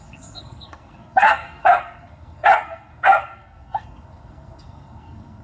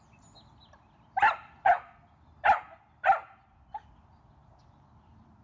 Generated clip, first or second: first